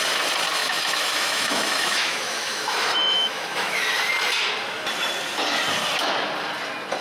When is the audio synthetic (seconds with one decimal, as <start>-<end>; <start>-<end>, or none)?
0.6-3.8